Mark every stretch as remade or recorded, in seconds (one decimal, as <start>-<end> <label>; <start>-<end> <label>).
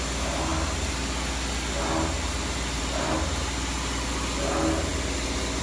0.0-5.6 recorded